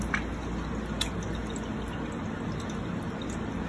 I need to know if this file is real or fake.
real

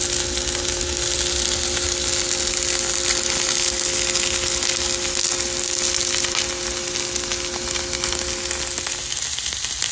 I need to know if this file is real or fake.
real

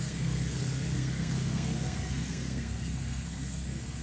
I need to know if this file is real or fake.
fake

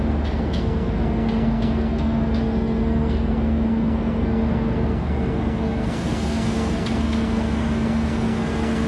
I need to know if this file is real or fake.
fake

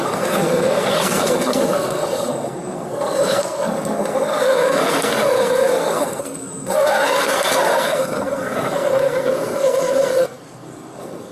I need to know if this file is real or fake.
fake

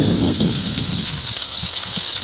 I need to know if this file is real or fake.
fake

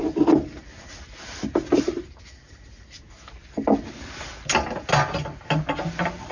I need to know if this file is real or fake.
real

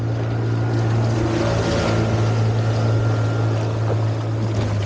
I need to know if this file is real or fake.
real